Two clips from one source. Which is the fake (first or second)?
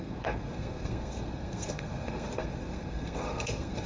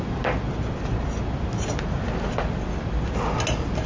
first